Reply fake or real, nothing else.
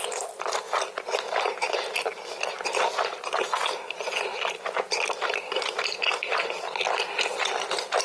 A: real